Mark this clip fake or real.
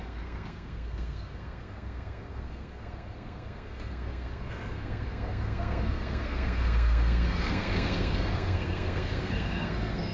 fake